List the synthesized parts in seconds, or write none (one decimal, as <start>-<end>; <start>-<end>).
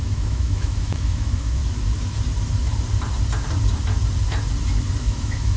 0.0-1.6; 5.0-5.6